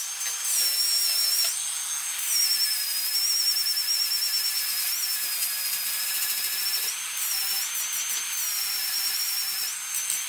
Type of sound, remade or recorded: recorded